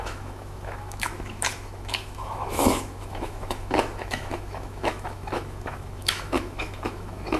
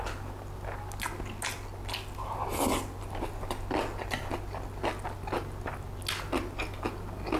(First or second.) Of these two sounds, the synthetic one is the first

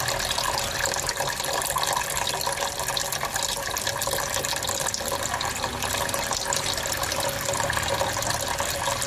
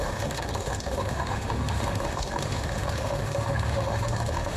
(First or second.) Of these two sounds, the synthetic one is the second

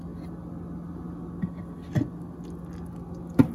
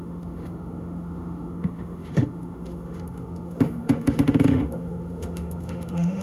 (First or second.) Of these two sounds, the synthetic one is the second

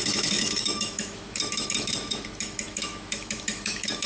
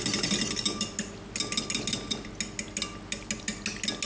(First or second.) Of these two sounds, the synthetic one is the first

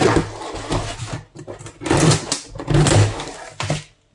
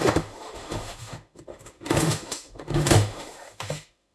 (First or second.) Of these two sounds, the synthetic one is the second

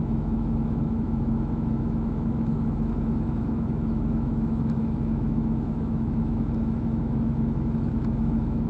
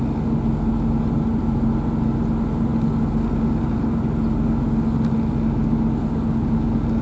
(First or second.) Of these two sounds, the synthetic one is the first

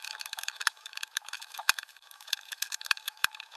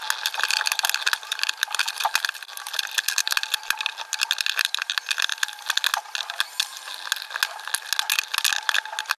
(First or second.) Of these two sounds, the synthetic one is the first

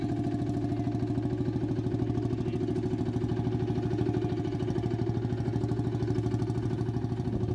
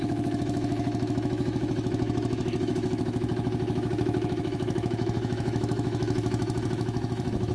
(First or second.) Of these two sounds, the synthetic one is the second